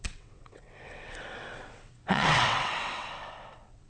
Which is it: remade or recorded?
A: remade